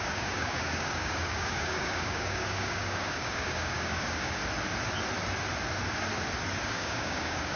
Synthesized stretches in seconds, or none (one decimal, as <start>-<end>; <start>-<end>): 0.0-4.4; 6.6-7.6